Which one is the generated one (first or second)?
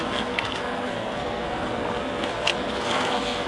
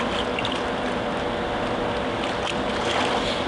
first